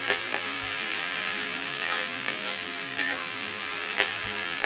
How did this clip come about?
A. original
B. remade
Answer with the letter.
B